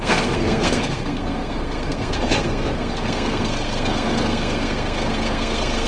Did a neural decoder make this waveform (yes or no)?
yes